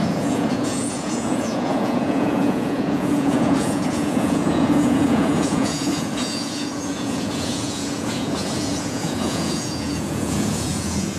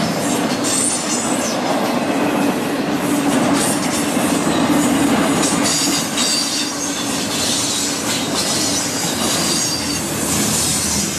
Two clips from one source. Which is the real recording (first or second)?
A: second